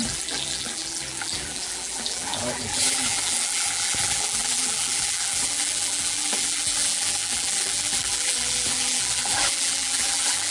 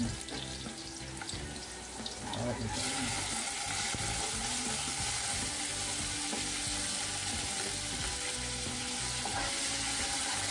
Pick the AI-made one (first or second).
first